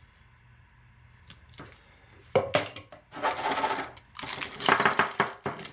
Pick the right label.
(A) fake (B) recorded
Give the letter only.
B